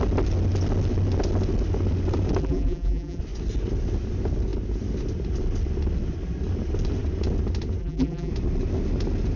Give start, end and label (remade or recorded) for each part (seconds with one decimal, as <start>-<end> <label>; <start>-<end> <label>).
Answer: 0.0-2.4 recorded; 2.4-3.2 remade; 3.2-7.8 recorded; 7.8-8.3 remade; 8.3-9.4 recorded